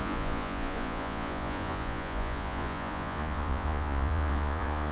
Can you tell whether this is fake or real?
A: fake